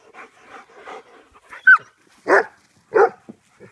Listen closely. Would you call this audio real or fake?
real